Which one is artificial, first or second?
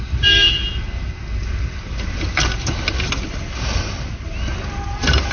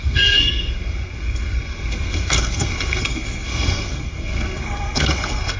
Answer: second